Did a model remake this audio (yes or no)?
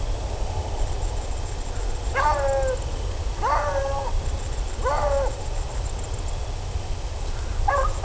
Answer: no